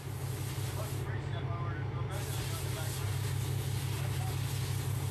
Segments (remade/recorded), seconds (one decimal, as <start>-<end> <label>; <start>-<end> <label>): 0.0-5.1 recorded